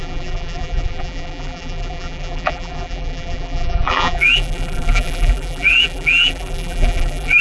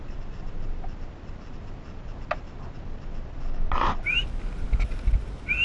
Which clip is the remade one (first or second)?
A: first